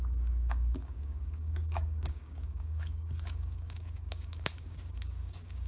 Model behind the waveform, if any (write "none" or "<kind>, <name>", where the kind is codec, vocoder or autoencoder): codec, DAC